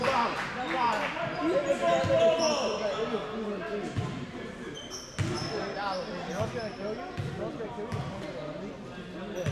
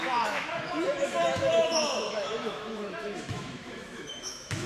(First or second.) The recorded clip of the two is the first